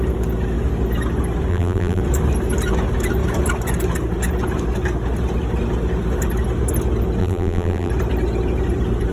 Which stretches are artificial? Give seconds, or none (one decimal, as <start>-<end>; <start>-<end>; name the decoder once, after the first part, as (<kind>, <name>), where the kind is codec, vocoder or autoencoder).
1.5-2.0 (vocoder, BigVGAN v2); 7.2-7.9